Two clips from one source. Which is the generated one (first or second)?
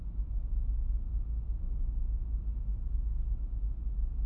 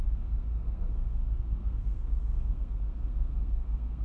second